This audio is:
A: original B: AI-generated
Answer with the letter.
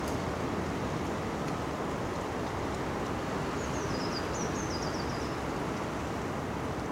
A